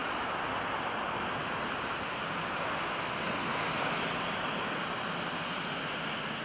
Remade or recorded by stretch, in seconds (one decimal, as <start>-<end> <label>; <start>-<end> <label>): 0.0-6.4 recorded